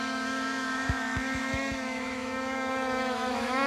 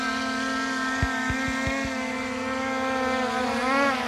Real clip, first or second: second